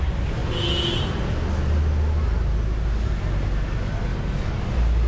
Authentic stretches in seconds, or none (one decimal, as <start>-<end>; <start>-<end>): 0.0-4.1; 4.6-5.1